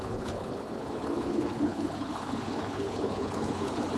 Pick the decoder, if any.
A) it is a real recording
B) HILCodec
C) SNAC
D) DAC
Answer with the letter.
B